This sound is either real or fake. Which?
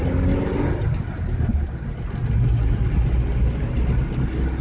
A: real